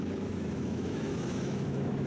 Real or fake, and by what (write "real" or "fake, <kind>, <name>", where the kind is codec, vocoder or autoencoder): fake, autoencoder, DAC-VAE